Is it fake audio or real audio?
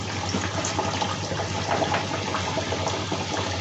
real